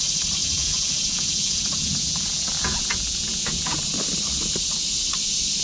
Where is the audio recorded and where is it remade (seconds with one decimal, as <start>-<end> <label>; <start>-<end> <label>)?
0.0-0.4 recorded; 0.4-3.8 remade; 3.8-5.6 recorded